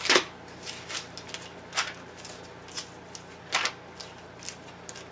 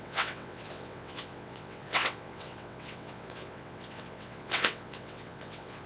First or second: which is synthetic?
second